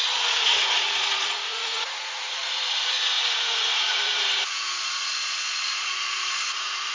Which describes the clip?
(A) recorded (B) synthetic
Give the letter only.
B